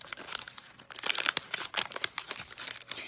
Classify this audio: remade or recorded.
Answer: recorded